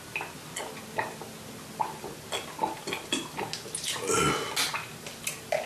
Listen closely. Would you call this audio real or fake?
real